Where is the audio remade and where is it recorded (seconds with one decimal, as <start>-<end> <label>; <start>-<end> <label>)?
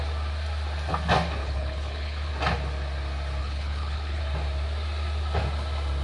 0.0-1.4 recorded; 1.4-2.3 remade; 2.3-3.4 recorded; 3.4-4.2 remade; 4.2-6.0 recorded